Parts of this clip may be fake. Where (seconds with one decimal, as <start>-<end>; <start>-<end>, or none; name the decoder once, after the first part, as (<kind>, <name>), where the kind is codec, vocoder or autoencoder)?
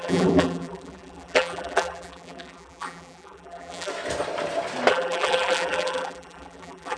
0.0-3.9 (vocoder, BigVGAN v2); 4.9-7.0